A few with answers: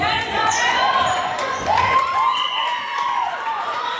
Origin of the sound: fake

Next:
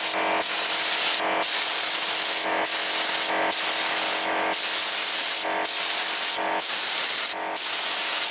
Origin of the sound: real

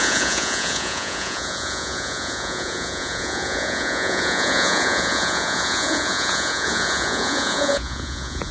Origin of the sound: fake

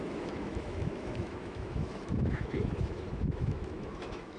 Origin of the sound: fake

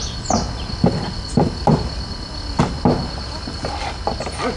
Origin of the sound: real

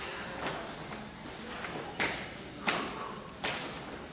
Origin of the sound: real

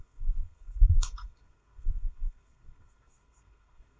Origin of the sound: fake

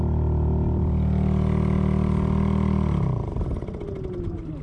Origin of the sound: real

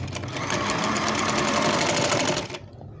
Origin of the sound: real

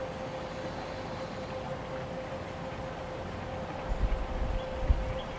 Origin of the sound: real